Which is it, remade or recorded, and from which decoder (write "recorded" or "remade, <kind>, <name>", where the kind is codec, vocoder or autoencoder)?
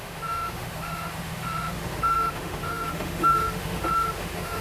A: remade, autoencoder, DAC-VAE